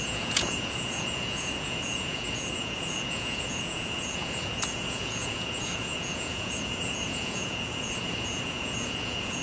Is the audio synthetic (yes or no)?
yes